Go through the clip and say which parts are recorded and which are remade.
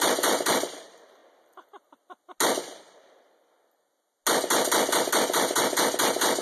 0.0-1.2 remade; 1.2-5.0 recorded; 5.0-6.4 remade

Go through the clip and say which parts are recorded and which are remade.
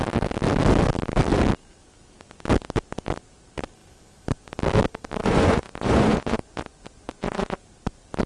0.0-5.2 recorded; 5.2-7.7 remade; 7.7-8.3 recorded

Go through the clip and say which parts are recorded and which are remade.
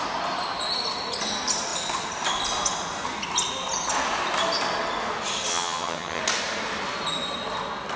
0.0-5.5 recorded; 5.5-6.2 remade; 6.2-8.0 recorded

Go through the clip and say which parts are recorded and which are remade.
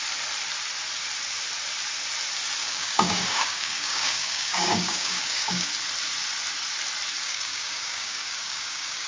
0.0-2.6 recorded; 2.6-5.7 remade; 5.7-7.2 recorded; 7.2-9.1 remade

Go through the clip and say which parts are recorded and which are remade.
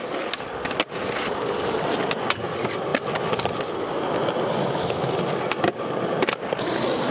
0.0-4.6 recorded; 4.6-5.1 remade; 5.1-7.1 recorded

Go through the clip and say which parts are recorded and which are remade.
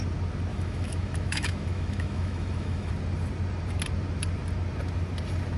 0.0-0.5 recorded; 0.5-2.9 remade; 2.9-5.6 recorded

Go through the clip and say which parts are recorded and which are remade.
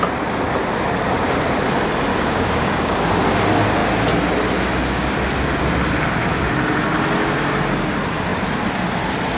0.0-2.1 recorded; 2.1-3.2 remade; 3.2-9.4 recorded